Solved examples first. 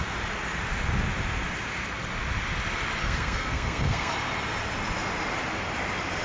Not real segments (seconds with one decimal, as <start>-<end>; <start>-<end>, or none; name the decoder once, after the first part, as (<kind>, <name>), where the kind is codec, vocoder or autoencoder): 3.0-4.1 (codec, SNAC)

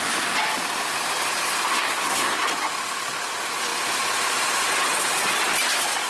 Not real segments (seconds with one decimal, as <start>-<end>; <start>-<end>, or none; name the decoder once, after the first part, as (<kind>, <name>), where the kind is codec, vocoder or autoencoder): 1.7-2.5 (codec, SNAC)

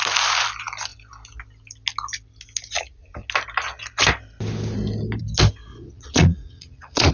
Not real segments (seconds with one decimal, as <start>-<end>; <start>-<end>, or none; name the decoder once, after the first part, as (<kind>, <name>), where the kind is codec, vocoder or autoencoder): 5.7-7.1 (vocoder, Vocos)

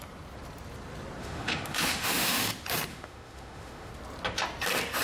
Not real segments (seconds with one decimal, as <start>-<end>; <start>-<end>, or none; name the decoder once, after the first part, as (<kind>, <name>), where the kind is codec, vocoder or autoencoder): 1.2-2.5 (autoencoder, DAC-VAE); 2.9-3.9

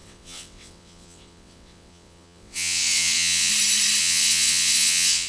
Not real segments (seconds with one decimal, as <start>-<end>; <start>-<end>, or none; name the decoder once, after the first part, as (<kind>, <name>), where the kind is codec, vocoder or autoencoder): 0.0-3.5 (vocoder, WaveNeXt); 4.0-5.3

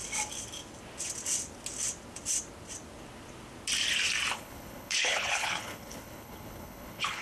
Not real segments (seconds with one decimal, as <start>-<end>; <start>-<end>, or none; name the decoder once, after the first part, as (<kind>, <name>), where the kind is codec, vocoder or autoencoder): 4.3-7.2 (codec, HILCodec)